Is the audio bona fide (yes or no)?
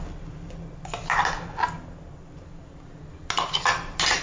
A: yes